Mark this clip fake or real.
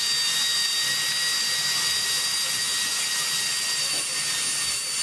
real